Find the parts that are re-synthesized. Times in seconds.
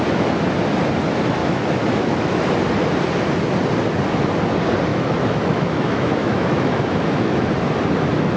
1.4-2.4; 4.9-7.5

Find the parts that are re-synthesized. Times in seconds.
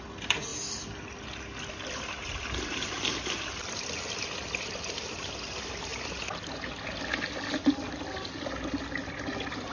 none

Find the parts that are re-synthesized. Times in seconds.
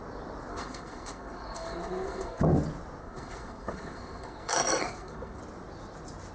0.5-2.4; 3.0-5.4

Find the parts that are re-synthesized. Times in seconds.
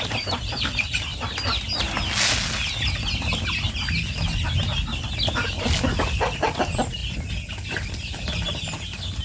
0.0-1.1; 6.0-7.0; 7.5-9.2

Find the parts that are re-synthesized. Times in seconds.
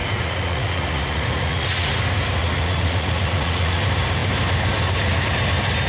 0.0-2.0; 2.4-3.8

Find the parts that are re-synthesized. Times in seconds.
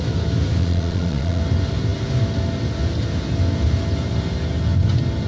0.6-1.4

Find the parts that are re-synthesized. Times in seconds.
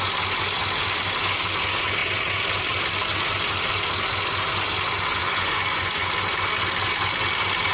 5.2-6.1